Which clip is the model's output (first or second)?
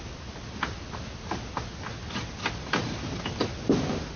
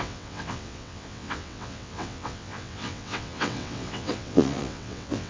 second